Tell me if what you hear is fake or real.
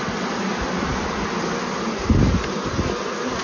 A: real